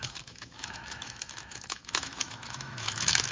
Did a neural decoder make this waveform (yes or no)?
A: yes